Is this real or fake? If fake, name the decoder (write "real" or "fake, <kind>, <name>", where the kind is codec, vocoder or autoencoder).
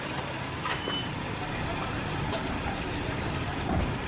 fake, vocoder, BigVGAN v2